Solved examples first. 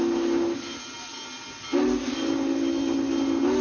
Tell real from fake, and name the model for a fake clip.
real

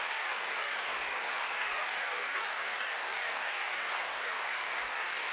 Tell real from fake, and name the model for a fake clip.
fake, codec, DAC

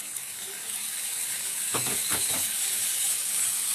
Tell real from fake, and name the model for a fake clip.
fake, codec, DAC